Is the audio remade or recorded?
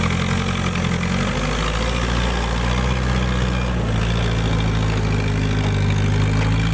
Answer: recorded